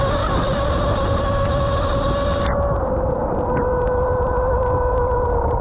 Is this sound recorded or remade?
recorded